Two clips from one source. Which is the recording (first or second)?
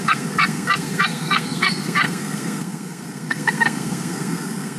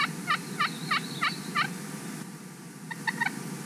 second